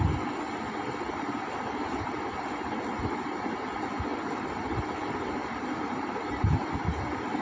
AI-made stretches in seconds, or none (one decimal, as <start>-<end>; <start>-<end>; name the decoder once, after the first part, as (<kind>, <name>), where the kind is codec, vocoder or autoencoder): 5.4-6.2 (vocoder, BigVGAN v2)